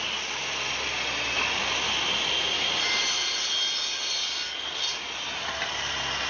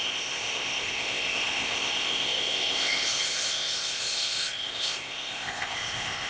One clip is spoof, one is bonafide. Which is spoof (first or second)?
second